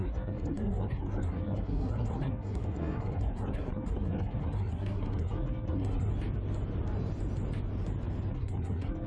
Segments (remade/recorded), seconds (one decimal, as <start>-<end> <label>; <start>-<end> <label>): 0.0-6.1 remade; 6.1-8.3 recorded; 8.3-9.1 remade